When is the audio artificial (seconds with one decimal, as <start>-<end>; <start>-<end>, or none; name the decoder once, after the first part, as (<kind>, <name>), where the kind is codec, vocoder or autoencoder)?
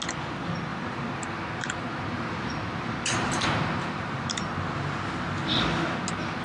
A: 0.7-4.5 (vocoder, BigVGAN v2)